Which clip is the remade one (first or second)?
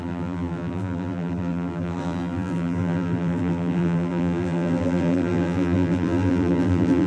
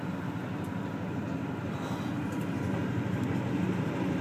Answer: first